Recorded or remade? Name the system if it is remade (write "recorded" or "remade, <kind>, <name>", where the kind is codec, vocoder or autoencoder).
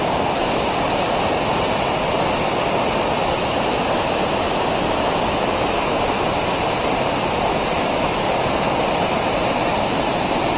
recorded